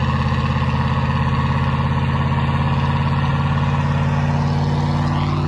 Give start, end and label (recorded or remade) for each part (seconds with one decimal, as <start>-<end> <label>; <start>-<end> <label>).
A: 0.0-5.5 recorded